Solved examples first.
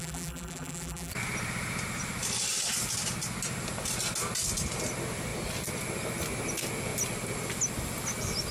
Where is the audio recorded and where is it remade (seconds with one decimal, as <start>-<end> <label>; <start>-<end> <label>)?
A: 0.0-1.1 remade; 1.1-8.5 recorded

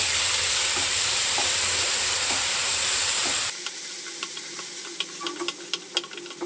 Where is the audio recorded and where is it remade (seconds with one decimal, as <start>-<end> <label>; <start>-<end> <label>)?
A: 0.0-0.9 recorded; 0.9-4.8 remade; 4.8-6.5 recorded

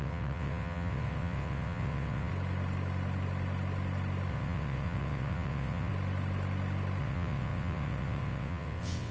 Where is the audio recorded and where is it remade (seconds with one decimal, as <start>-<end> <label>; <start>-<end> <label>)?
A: 0.0-2.3 remade; 2.3-4.3 recorded; 4.3-5.9 remade; 5.9-7.0 recorded; 7.0-9.1 remade